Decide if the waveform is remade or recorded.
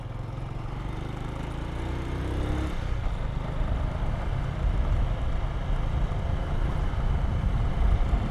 recorded